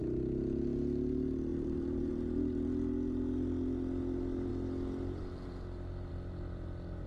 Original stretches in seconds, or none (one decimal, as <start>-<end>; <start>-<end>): 0.0-1.5; 2.1-7.1